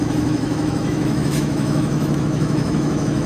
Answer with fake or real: fake